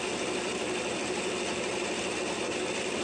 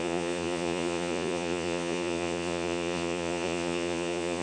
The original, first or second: first